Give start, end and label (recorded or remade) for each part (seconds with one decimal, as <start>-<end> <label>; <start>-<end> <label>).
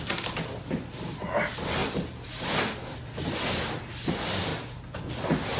0.0-1.8 recorded; 1.8-3.0 remade; 3.0-4.5 recorded; 4.5-5.1 remade; 5.1-5.6 recorded